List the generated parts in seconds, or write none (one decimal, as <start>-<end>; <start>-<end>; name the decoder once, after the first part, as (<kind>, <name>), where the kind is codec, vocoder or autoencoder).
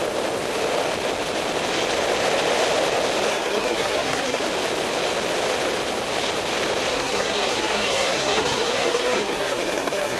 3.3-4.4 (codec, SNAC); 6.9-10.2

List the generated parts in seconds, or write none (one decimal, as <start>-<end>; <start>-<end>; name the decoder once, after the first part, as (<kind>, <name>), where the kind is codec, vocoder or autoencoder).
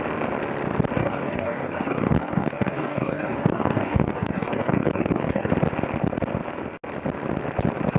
1.0-5.5 (codec, DAC)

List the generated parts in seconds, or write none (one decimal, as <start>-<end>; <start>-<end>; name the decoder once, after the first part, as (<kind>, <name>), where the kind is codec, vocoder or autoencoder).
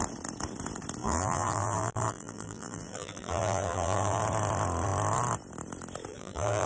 1.0-4.2 (vocoder, BigVGAN v2); 6.1-6.7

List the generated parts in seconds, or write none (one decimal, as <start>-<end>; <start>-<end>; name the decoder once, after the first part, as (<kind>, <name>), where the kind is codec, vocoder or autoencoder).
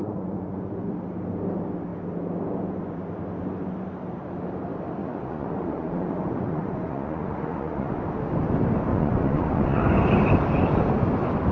0.0-0.7 (vocoder, Vocos); 5.0-8.0; 8.9-9.8